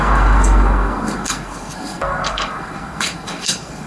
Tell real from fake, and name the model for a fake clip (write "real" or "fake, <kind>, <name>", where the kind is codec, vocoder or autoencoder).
fake, codec, SNAC